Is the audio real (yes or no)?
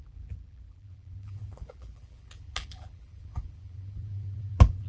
no